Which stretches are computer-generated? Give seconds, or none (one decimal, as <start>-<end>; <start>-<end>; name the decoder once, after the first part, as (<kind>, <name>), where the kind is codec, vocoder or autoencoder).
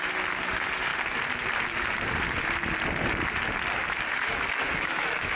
0.0-0.9 (autoencoder, DAC-VAE); 4.1-5.4